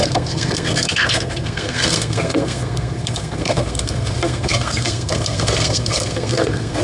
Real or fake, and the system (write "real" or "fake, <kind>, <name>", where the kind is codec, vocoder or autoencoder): fake, codec, SNAC